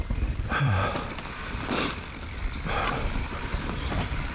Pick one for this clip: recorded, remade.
remade